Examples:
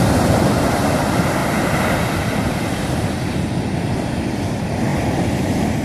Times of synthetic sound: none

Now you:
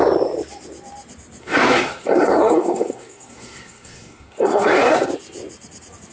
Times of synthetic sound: 1.4-5.1 (codec, SNAC)

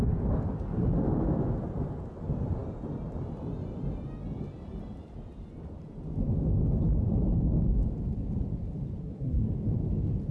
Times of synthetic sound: 9.0-9.5 (codec, SNAC)

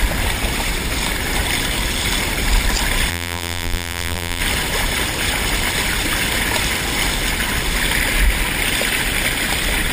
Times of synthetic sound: 3.1-4.4 (vocoder, BigVGAN v2)

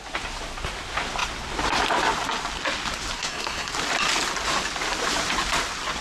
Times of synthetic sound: 3.2-3.7 (codec, SNAC)

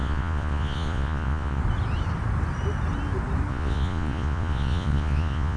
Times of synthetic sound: 0.0-1.6 (vocoder, Vocos); 3.5-5.6

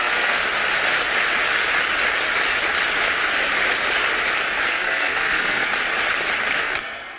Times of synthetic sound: 0.0-0.4 (codec, SNAC); 4.7-5.7; 6.6-7.2

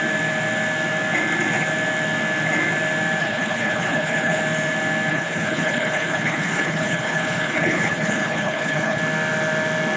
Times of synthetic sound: 3.2-4.4 (codec, HILCodec); 5.1-9.0